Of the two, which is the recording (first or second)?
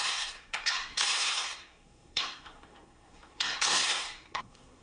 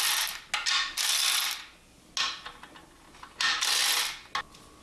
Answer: second